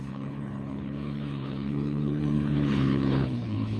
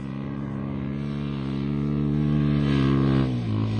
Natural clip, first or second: second